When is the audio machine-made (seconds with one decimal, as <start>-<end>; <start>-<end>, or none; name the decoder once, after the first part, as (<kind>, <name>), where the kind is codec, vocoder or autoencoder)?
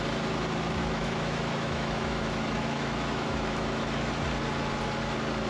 0.8-4.1 (autoencoder, DAC-VAE)